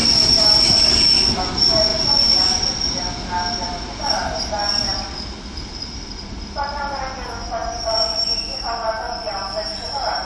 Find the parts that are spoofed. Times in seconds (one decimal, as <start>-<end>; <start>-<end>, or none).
none